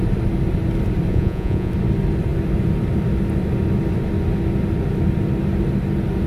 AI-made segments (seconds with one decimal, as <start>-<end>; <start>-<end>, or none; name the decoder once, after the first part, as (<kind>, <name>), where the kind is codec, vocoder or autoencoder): 1.1-1.7 (vocoder, Vocos)

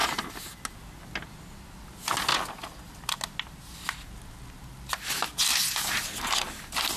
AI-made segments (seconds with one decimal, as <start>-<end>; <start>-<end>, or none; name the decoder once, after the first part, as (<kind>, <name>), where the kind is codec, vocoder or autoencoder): none